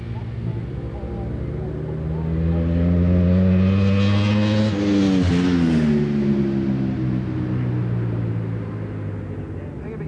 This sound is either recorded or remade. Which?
recorded